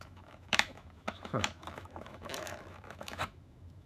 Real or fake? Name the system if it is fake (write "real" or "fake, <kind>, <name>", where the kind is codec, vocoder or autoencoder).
fake, autoencoder, DAC-VAE